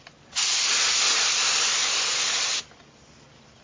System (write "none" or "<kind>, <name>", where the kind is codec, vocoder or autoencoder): none